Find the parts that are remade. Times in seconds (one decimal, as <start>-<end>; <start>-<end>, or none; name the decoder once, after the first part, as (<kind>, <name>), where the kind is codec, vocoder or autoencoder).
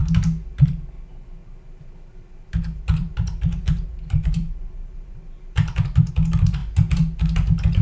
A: 1.4-6.1 (vocoder, BigVGAN v2)